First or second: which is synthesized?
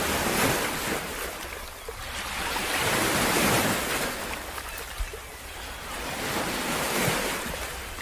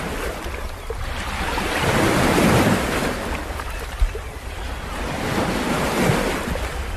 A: second